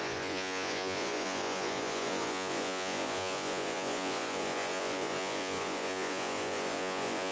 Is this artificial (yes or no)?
yes